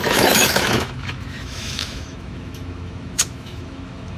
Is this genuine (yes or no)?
no